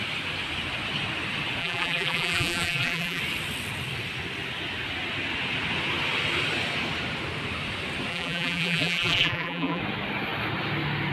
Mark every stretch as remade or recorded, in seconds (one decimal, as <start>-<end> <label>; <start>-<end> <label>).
0.0-1.6 recorded; 1.6-3.2 remade; 3.2-8.1 recorded; 8.1-9.8 remade; 9.8-11.1 recorded